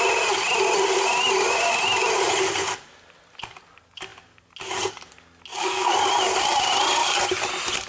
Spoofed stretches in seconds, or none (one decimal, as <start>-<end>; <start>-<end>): 5.5-6.1